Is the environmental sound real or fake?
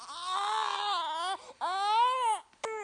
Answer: real